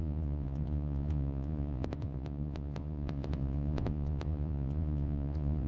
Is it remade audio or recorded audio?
remade